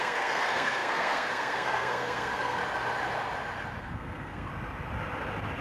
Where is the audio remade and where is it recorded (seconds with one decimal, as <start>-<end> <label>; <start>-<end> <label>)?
0.0-2.6 remade; 2.6-3.8 recorded; 3.8-4.5 remade; 4.5-5.6 recorded